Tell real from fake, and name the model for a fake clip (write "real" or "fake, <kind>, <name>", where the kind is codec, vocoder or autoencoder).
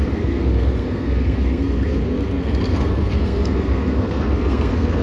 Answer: fake, codec, SNAC